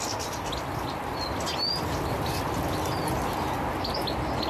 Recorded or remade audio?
recorded